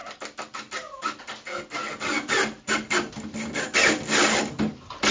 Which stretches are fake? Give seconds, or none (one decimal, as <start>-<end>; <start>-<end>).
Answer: 0.0-1.3; 1.8-5.1